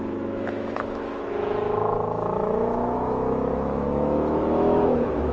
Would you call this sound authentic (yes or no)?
no